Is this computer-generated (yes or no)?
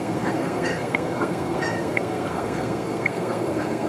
yes